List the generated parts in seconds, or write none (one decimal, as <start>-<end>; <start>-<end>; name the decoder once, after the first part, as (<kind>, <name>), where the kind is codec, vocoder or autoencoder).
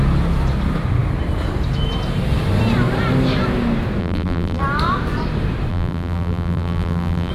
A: 4.0-4.6 (vocoder, BigVGAN v2); 5.7-7.3